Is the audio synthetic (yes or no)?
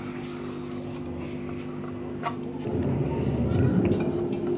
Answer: no